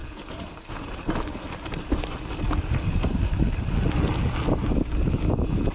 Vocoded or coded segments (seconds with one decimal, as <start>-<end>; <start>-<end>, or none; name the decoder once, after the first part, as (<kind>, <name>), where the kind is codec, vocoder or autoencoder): 0.0-0.9 (vocoder, Vocos)